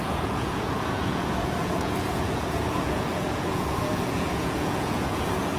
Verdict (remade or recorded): remade